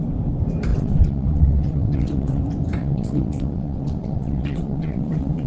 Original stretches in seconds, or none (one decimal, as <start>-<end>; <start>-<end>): 0.0-0.7; 2.4-2.8

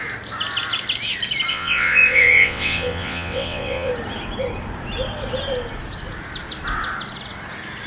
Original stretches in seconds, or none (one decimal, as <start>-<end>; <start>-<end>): 0.0-1.5; 3.9-7.9

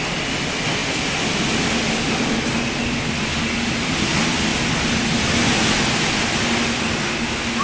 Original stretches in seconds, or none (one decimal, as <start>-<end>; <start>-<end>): 0.0-7.6